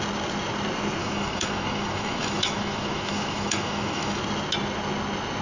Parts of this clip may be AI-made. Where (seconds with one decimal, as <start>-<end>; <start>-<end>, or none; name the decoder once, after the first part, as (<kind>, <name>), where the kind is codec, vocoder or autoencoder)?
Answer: 1.0-4.2 (autoencoder, DAC-VAE)